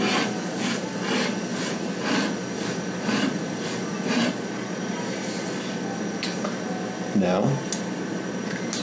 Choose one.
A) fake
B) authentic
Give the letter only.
B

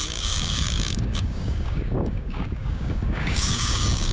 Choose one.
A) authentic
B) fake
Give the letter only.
B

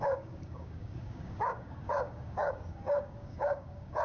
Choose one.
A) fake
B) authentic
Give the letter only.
A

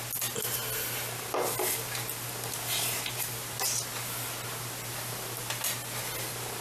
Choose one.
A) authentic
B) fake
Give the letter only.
A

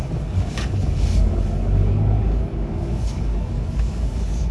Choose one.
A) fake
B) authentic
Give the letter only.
A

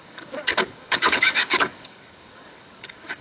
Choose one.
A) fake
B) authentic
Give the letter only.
A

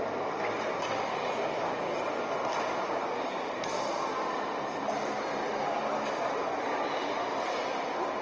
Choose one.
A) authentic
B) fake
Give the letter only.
A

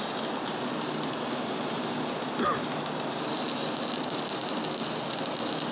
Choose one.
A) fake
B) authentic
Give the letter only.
B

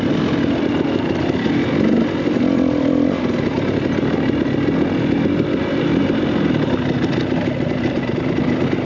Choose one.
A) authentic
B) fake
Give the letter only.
A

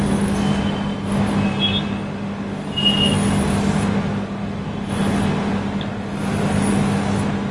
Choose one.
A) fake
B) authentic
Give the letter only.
B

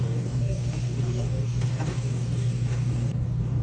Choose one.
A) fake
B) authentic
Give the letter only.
A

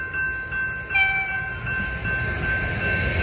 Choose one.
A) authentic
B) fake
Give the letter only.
A